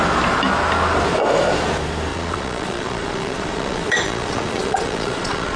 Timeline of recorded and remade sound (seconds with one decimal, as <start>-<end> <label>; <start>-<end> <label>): 0.0-2.1 recorded; 2.1-5.6 remade